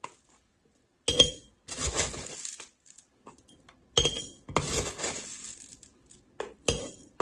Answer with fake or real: real